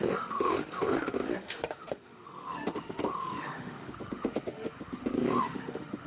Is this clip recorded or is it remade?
remade